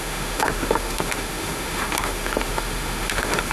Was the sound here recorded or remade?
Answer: remade